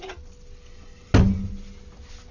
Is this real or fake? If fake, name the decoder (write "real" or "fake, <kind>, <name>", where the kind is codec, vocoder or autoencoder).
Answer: real